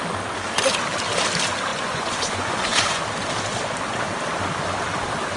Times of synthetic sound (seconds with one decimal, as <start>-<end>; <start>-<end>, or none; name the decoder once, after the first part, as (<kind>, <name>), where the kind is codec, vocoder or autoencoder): 1.7-3.0 (vocoder, Vocos)